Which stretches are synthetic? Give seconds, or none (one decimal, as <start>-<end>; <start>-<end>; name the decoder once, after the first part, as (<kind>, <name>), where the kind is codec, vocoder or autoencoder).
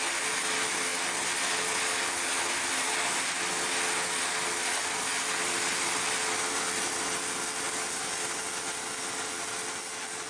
none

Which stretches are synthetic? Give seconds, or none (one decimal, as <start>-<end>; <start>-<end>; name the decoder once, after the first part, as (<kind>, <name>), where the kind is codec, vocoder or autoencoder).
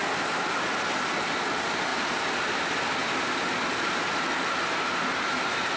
none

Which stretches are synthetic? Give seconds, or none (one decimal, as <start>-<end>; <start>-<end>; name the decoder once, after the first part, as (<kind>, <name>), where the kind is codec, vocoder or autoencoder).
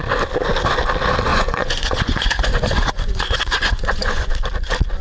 1.3-4.3 (vocoder, Vocos)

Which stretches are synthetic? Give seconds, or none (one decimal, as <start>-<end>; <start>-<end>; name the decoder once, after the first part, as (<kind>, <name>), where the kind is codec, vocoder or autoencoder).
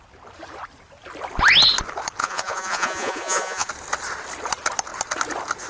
2.2-3.7 (vocoder, Vocos)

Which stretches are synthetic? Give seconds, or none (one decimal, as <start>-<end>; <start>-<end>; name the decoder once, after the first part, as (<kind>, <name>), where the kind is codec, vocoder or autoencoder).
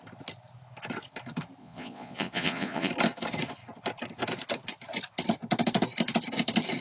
1.6-2.9 (vocoder, Vocos)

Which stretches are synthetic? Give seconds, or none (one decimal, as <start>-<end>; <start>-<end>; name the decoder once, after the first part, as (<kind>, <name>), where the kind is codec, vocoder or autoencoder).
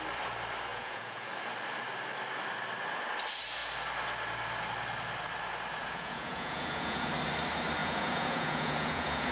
0.7-1.3 (vocoder, Vocos); 5.8-7.1; 7.8-9.3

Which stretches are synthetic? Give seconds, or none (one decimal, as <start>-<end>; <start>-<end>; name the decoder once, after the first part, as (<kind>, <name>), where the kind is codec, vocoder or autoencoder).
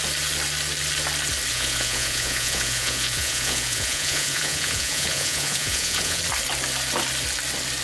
1.5-6.2 (vocoder, Vocos)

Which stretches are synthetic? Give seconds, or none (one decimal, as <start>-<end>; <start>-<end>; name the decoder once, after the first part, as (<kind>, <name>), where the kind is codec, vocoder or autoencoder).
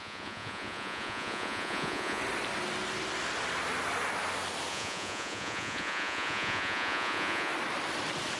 0.0-2.2 (vocoder, Vocos); 4.7-7.5